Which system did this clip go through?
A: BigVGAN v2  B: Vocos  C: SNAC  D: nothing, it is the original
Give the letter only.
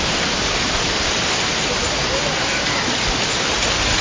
D